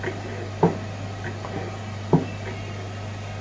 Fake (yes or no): no